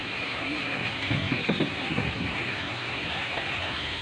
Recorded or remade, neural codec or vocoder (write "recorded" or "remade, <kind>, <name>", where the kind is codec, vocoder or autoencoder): remade, codec, SNAC